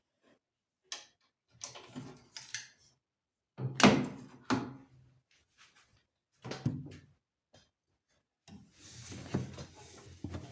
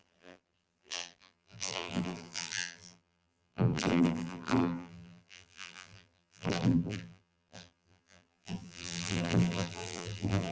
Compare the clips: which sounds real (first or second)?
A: first